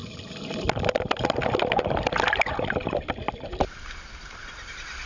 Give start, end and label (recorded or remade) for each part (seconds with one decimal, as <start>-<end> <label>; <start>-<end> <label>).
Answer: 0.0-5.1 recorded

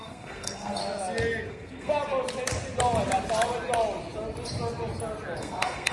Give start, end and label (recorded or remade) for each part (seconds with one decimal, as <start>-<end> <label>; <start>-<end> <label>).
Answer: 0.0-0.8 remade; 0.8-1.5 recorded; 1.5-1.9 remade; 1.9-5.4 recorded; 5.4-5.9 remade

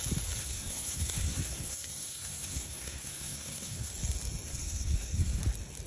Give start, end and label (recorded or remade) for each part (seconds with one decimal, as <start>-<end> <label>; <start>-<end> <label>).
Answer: 0.0-0.4 recorded; 0.4-3.9 remade; 3.9-4.5 recorded; 4.5-5.4 remade; 5.4-5.9 recorded

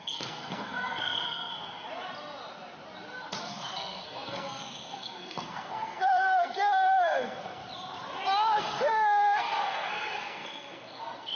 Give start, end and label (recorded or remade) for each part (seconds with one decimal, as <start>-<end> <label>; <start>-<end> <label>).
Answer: 0.0-1.5 remade; 1.5-3.4 recorded; 3.4-7.6 remade; 7.6-8.6 recorded; 8.6-11.4 remade

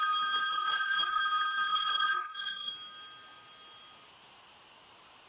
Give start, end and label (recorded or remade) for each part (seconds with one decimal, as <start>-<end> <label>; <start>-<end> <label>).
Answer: 0.0-0.5 recorded; 0.5-1.2 remade; 1.2-1.7 recorded; 1.7-2.7 remade; 2.7-5.3 recorded